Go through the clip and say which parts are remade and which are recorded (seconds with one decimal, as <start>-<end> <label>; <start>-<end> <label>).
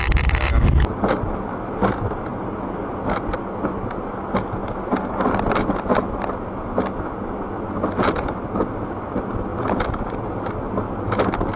0.0-1.7 recorded; 1.7-2.3 remade; 2.3-2.8 recorded; 2.8-4.6 remade; 4.6-5.8 recorded; 5.8-11.6 remade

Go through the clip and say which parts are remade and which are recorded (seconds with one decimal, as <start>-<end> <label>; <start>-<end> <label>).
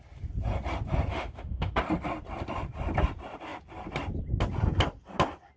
0.0-1.1 recorded; 1.1-1.7 remade; 1.7-5.6 recorded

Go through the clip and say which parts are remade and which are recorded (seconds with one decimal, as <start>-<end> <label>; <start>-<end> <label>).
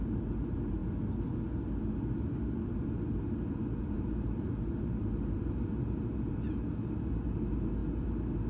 0.0-0.8 remade; 0.8-3.5 recorded; 3.5-7.8 remade; 7.8-8.5 recorded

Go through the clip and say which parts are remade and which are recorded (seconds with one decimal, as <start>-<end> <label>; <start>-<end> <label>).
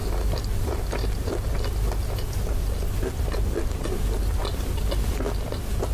0.0-5.9 recorded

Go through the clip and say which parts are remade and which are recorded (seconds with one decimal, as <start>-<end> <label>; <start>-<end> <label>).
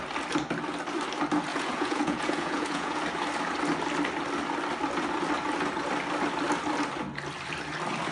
0.0-1.5 recorded; 1.5-3.0 remade; 3.0-8.1 recorded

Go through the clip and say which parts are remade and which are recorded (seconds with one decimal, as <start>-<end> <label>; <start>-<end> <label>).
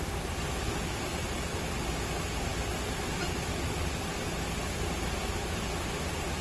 0.0-1.1 recorded; 1.1-1.6 remade; 1.6-6.4 recorded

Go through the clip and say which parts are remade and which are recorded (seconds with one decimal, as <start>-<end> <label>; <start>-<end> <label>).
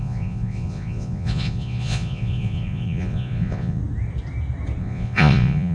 0.0-3.8 remade; 3.8-4.8 recorded; 4.8-5.7 remade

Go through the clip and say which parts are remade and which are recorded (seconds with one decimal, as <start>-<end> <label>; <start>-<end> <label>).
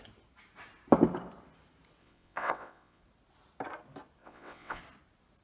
0.0-2.0 recorded; 2.0-3.0 remade; 3.0-4.2 recorded; 4.2-4.8 remade; 4.8-5.4 recorded